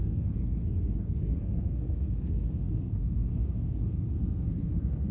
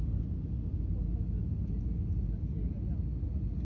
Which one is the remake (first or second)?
first